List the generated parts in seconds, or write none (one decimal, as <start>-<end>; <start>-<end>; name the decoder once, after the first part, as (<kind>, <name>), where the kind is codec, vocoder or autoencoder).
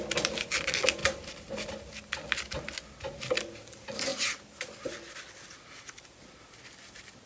none